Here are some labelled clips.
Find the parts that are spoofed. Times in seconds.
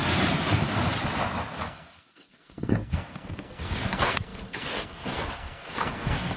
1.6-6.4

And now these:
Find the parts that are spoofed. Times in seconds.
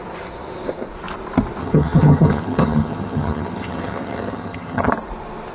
1.6-4.9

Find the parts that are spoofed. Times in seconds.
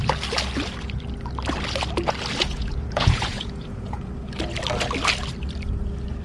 2.4-4.1